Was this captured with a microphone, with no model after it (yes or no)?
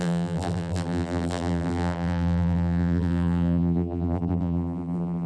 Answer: no